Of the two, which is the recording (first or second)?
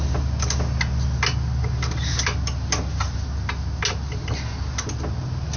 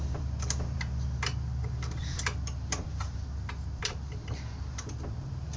first